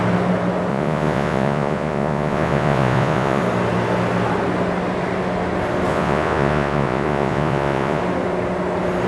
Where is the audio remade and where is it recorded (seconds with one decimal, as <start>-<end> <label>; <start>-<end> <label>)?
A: 0.0-0.7 recorded; 0.7-3.4 remade; 3.4-5.9 recorded; 5.9-8.0 remade; 8.0-9.1 recorded